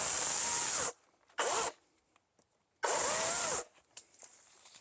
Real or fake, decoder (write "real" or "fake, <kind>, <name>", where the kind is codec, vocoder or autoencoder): real